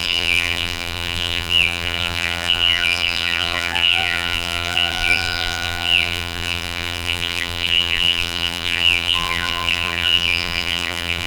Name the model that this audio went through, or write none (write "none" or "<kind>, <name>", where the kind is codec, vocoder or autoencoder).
vocoder, BigVGAN v2